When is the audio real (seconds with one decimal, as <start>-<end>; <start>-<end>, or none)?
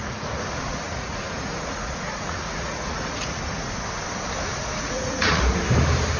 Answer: 3.7-4.6; 5.4-6.2